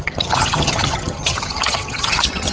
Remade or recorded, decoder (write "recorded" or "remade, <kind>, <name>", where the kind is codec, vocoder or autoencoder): remade, vocoder, HiFi-GAN